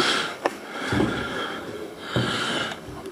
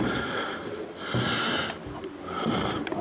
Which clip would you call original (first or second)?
second